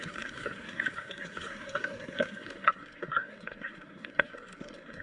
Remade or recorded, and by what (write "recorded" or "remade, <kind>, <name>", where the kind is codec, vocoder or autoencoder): remade, codec, SNAC